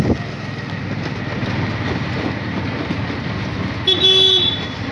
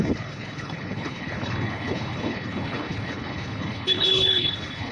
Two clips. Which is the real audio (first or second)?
first